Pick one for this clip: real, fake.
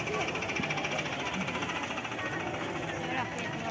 real